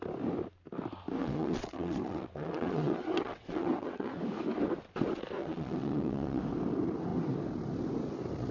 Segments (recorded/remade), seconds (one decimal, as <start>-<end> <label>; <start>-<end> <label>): 0.0-1.2 recorded; 1.2-4.1 remade; 4.1-5.4 recorded; 5.4-6.4 remade; 6.4-8.5 recorded

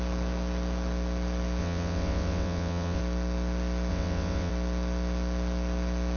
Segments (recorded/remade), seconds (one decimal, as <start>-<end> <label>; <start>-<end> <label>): 0.0-1.6 recorded; 1.6-3.0 remade; 3.0-3.9 recorded; 3.9-4.5 remade; 4.5-6.2 recorded

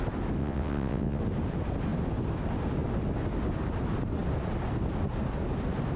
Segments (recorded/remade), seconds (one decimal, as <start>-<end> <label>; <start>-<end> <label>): 0.0-0.4 recorded; 0.4-1.2 remade; 1.2-6.0 recorded

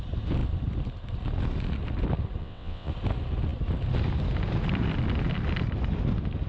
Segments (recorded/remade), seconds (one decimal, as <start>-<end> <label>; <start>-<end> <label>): 0.0-2.4 recorded; 2.4-2.9 remade; 2.9-6.5 recorded

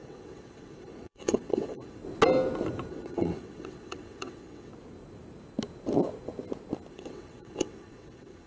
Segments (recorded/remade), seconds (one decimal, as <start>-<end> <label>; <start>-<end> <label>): 0.0-2.0 remade; 2.0-2.9 recorded; 2.9-4.7 remade; 4.7-6.9 recorded; 6.9-8.5 remade

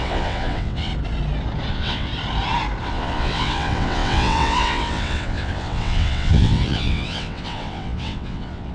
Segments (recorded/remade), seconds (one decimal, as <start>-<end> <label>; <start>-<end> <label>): 0.0-0.9 remade; 0.9-1.7 recorded; 1.7-2.1 remade; 2.1-2.8 recorded; 2.8-8.7 remade

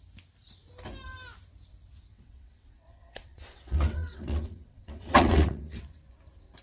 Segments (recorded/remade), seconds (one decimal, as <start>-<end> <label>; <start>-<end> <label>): 0.0-2.1 recorded; 2.1-5.8 remade; 5.8-6.6 recorded